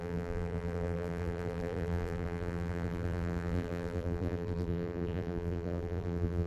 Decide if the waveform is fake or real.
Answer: fake